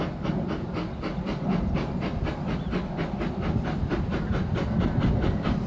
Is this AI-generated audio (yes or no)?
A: no